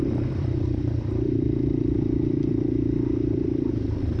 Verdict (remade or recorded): remade